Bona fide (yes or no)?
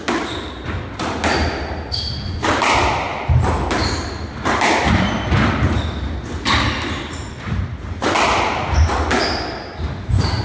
yes